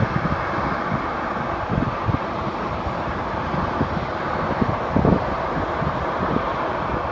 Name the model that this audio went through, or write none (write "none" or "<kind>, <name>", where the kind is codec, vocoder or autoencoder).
none